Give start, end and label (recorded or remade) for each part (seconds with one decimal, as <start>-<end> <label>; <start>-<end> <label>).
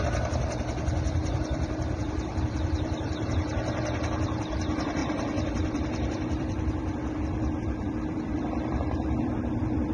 0.0-1.2 recorded; 1.2-3.5 remade; 3.5-5.0 recorded; 5.0-9.3 remade; 9.3-9.9 recorded